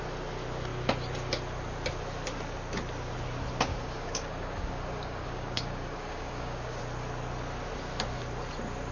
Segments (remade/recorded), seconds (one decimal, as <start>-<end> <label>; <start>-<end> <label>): 0.0-3.7 recorded; 3.7-6.8 remade; 6.8-8.9 recorded